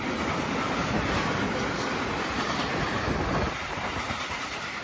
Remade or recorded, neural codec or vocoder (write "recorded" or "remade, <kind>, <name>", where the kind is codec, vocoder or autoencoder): recorded